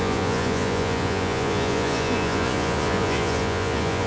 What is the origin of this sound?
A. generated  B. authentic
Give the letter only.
A